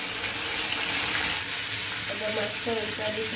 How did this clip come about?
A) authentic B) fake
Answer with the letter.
A